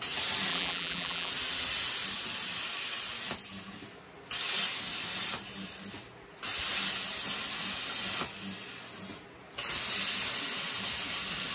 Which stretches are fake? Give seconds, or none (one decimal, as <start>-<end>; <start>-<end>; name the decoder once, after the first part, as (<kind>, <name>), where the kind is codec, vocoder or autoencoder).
0.5-1.3 (vocoder, BigVGAN v2)